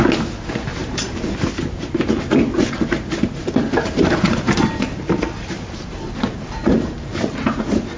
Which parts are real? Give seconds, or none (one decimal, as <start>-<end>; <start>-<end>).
0.0-0.8; 1.4-4.0; 7.3-8.0